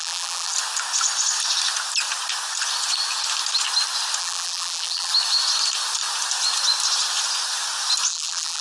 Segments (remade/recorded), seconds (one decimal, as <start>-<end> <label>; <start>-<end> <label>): 0.0-0.5 remade; 0.5-4.2 recorded; 4.2-5.1 remade; 5.1-8.1 recorded; 8.1-8.6 remade

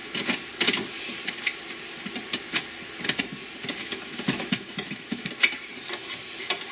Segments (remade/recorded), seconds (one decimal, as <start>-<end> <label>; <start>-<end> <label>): 0.0-3.8 recorded; 3.8-5.3 remade; 5.3-6.7 recorded

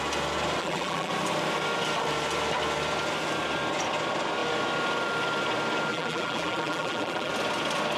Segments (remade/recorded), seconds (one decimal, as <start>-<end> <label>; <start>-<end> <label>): 0.0-0.6 recorded; 0.6-1.1 remade; 1.1-5.9 recorded; 5.9-7.3 remade; 7.3-8.0 recorded

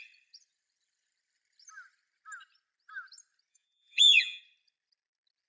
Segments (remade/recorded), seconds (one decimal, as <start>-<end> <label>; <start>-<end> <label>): 0.0-3.5 recorded; 3.5-4.4 remade; 4.4-5.5 recorded

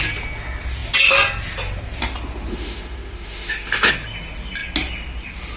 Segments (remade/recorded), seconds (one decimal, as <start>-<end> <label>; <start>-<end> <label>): 0.0-2.5 recorded; 2.5-3.9 remade; 3.9-5.6 recorded

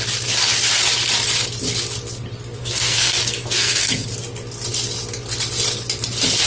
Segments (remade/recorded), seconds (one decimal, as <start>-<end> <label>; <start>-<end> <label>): 0.0-2.6 recorded; 2.6-4.1 remade; 4.1-6.5 recorded

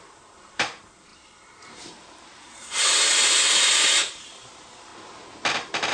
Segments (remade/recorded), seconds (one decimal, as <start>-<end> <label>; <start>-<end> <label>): 0.0-4.9 remade; 4.9-5.9 recorded

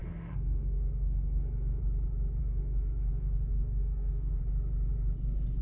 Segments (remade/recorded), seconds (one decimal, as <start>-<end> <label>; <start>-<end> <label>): 0.0-1.8 remade; 1.8-2.4 recorded; 2.4-4.4 remade; 4.4-5.6 recorded